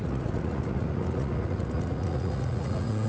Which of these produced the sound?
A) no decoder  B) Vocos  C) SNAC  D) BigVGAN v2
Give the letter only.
B